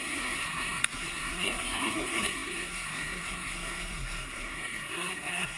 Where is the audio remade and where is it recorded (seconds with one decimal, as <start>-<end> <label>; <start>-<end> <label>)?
0.0-5.6 remade